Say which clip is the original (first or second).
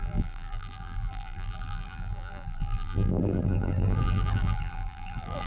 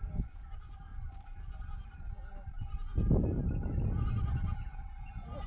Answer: second